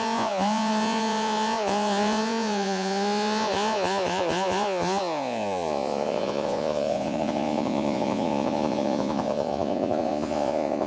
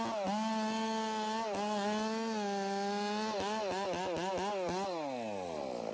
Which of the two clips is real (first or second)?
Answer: second